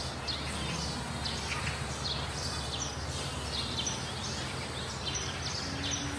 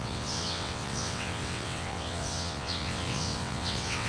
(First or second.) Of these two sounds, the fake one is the second